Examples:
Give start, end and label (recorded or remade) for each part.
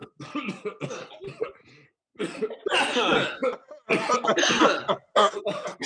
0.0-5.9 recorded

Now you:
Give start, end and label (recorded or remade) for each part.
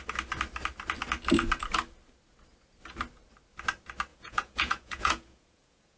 0.0-4.1 recorded; 4.1-6.0 remade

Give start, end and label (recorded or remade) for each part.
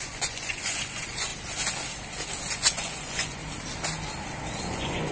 0.0-1.3 remade; 1.3-2.5 recorded; 2.5-3.4 remade; 3.4-4.6 recorded; 4.6-5.1 remade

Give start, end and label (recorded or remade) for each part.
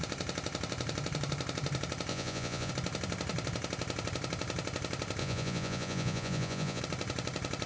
0.0-2.1 recorded; 2.1-2.7 remade; 2.7-5.2 recorded; 5.2-6.8 remade; 6.8-7.7 recorded